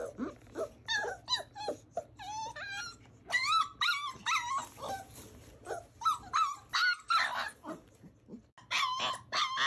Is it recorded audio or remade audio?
recorded